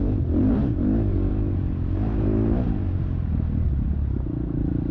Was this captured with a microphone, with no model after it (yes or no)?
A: yes